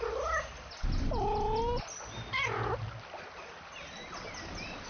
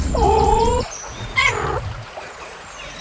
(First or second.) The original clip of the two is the first